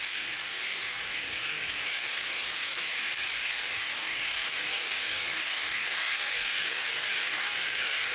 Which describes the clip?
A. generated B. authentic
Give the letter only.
A